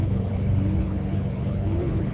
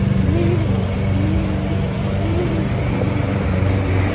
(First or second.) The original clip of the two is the second